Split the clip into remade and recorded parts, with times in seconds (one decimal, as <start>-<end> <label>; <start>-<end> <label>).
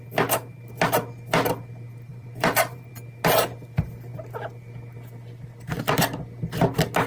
0.0-2.1 recorded; 2.1-2.9 remade; 2.9-7.1 recorded